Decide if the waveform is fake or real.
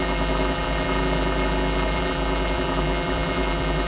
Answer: fake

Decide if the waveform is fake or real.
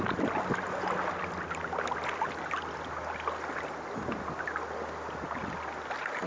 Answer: real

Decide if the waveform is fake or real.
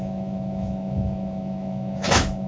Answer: fake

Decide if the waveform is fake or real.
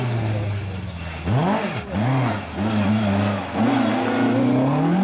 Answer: real